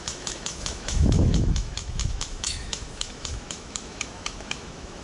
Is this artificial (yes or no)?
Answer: yes